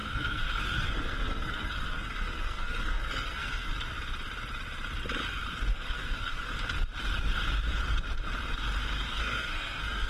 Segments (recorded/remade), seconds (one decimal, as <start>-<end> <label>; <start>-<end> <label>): 0.0-3.7 remade; 3.7-5.7 recorded; 5.7-6.5 remade; 6.5-9.1 recorded; 9.1-10.1 remade